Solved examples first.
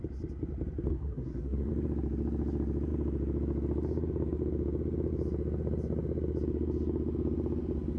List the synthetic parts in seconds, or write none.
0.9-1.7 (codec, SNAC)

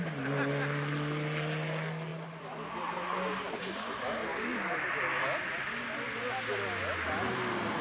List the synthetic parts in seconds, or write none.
none

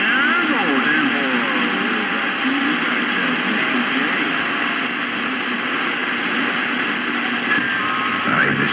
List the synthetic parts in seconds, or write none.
none

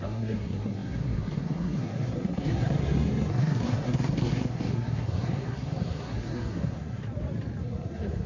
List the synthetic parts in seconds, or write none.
0.0-7.0 (codec, SNAC); 7.6-8.3

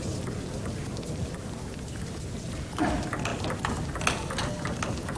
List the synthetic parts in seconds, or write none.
none

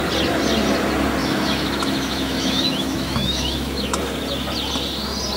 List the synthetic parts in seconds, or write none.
1.2-4.0 (autoencoder, DAC-VAE)

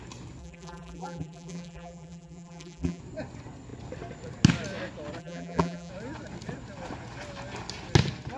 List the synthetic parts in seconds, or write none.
0.4-3.0 (vocoder, BigVGAN v2); 5.2-5.9